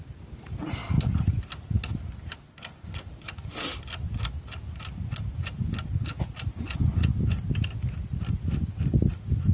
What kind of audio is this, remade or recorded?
recorded